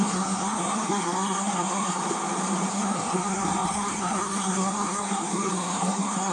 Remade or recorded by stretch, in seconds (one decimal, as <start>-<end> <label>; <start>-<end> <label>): 0.0-2.0 remade; 2.0-2.7 recorded; 2.7-6.3 remade